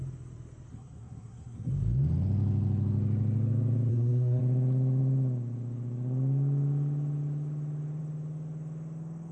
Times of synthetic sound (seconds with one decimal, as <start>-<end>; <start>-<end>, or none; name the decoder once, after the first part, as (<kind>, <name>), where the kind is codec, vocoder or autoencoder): 0.7-1.7 (codec, SNAC); 3.9-4.4